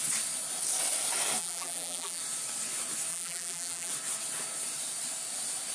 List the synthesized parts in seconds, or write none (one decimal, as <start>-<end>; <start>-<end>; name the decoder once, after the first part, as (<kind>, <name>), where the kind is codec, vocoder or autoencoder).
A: 1.4-2.2 (vocoder, BigVGAN v2); 3.1-3.9